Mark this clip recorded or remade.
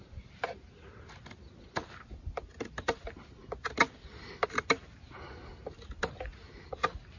recorded